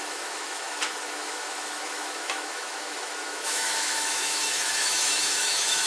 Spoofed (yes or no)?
yes